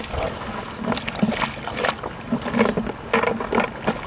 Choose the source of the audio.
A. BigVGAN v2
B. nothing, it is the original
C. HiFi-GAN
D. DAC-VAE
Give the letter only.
B